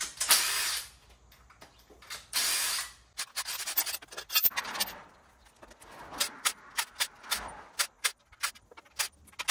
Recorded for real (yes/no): yes